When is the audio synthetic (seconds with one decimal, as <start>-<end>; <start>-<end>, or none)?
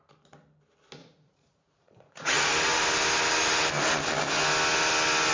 1.0-2.4